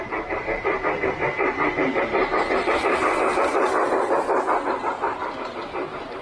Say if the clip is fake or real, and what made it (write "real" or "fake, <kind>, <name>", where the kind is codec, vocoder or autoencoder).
real